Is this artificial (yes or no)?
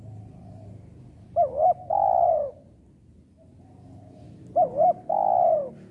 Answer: no